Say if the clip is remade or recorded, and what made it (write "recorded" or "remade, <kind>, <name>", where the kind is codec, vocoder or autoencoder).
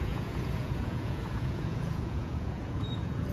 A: remade, vocoder, Vocos